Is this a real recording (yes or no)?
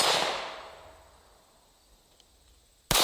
yes